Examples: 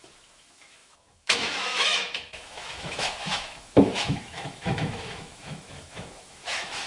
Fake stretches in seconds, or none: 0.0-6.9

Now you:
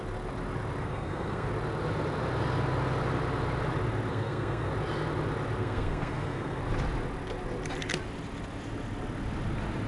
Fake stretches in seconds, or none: 0.8-1.5; 4.1-4.7; 5.6-6.6

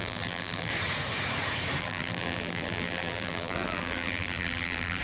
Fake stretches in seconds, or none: 0.0-0.7; 1.8-5.0

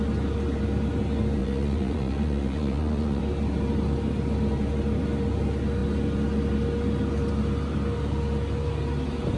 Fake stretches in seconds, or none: 1.4-3.2

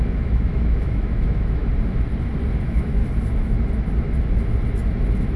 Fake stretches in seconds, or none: 0.0-1.6; 2.6-3.0

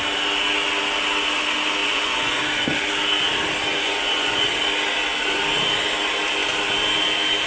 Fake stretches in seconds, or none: 1.8-2.4; 3.7-4.5

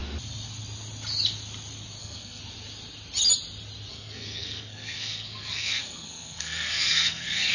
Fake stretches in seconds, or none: 2.0-2.4; 3.9-7.5

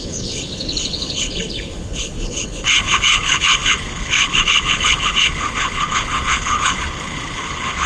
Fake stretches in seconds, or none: 0.0-7.9